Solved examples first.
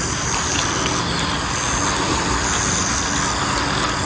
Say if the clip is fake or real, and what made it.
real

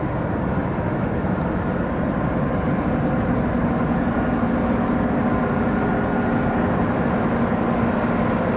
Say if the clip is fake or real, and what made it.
real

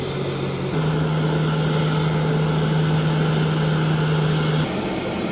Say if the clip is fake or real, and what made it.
real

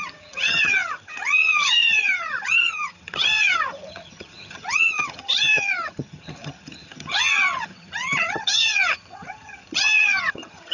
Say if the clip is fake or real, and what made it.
fake, vocoder, HiFi-GAN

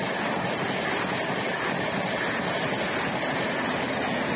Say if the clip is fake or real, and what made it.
real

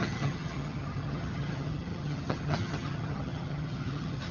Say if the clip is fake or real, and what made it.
fake, vocoder, HiFi-GAN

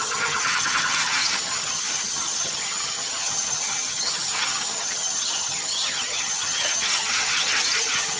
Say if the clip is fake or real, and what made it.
fake, vocoder, HiFi-GAN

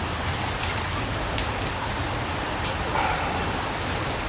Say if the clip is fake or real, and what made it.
real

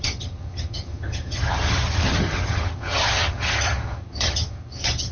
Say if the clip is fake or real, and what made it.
fake, vocoder, HiFi-GAN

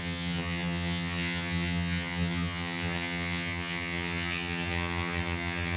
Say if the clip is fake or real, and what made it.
fake, vocoder, HiFi-GAN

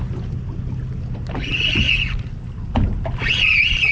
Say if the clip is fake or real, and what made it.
real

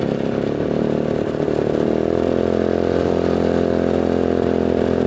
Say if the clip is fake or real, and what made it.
real